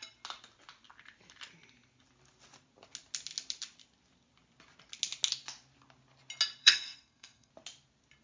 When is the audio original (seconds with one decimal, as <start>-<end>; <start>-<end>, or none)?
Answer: 0.0-6.6; 7.5-8.2